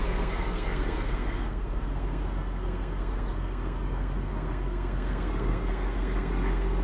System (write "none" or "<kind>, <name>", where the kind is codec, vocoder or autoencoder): codec, SNAC